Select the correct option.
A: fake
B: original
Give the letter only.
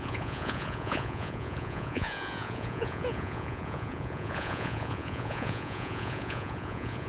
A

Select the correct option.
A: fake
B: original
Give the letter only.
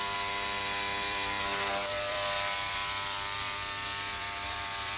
A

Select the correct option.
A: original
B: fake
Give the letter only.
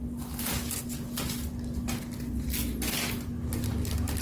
A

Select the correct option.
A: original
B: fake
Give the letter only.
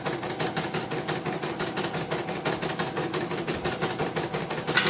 A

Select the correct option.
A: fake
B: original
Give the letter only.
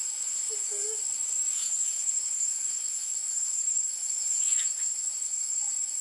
A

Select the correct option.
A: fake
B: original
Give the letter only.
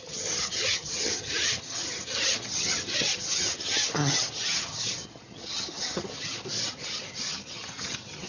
A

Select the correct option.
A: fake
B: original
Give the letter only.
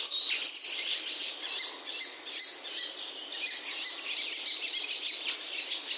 B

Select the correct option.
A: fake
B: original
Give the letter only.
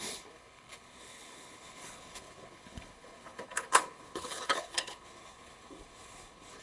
A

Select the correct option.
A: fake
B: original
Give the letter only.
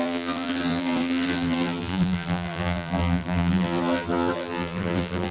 A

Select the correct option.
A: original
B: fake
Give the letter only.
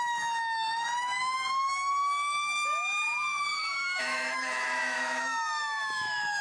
B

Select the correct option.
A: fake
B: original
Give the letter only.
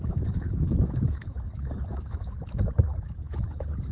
A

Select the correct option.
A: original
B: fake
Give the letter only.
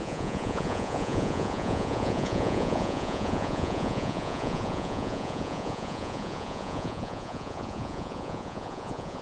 B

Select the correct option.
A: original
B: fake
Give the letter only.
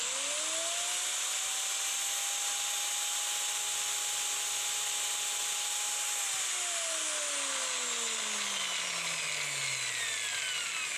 A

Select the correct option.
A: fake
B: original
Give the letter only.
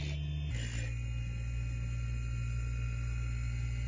B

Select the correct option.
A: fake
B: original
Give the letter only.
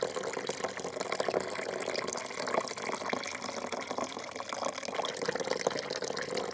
B